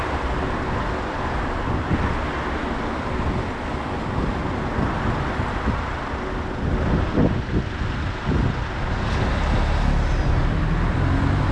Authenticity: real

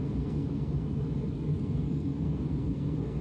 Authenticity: fake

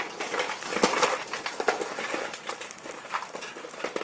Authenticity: real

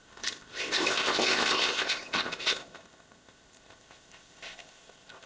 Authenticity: fake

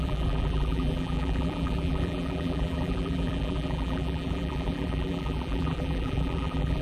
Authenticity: fake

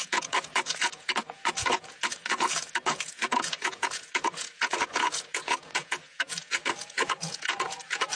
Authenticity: fake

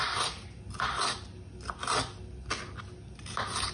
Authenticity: real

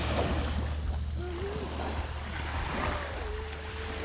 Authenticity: real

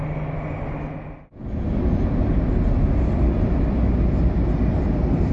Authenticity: real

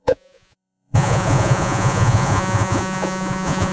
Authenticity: fake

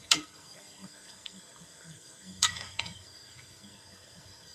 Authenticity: fake